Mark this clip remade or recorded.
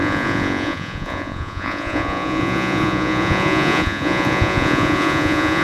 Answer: remade